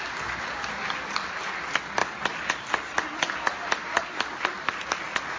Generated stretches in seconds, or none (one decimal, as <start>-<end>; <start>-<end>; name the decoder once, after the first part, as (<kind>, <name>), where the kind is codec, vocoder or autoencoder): none